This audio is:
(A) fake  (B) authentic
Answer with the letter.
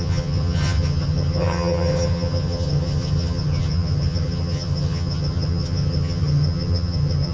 A